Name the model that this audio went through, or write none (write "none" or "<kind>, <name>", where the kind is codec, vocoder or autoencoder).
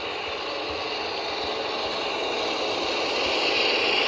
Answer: none